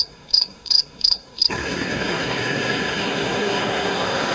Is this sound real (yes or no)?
no